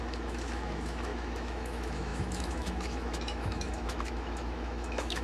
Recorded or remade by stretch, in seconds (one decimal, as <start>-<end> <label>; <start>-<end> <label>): 0.0-5.2 remade